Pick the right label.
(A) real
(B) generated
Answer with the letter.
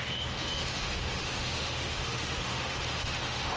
B